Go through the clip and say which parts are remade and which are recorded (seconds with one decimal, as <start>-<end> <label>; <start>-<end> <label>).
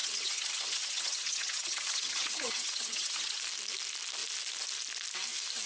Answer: 0.0-3.4 remade; 3.4-5.7 recorded